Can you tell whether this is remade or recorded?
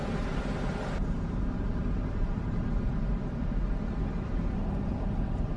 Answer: recorded